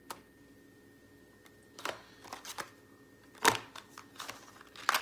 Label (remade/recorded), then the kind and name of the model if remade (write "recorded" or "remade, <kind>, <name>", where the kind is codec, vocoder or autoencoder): recorded